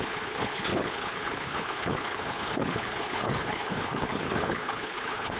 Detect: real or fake fake